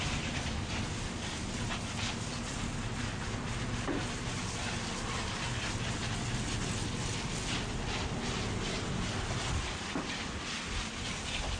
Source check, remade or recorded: recorded